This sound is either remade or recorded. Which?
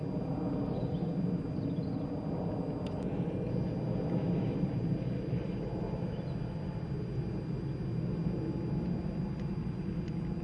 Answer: recorded